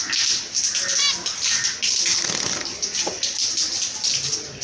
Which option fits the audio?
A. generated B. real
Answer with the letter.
B